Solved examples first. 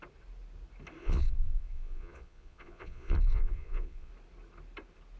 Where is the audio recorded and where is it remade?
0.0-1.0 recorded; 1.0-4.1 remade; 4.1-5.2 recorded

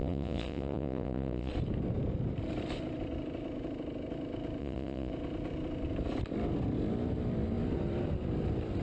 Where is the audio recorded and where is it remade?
0.0-1.5 remade; 1.5-4.6 recorded; 4.6-5.1 remade; 5.1-8.8 recorded

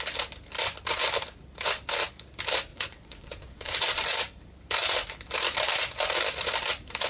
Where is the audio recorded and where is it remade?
0.0-2.7 recorded; 2.7-4.0 remade; 4.0-7.1 recorded